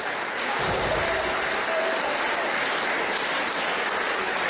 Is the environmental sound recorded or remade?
recorded